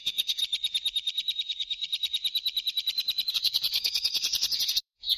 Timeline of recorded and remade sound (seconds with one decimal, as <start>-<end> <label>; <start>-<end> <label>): 0.0-0.4 remade; 0.4-3.3 recorded; 3.3-5.2 remade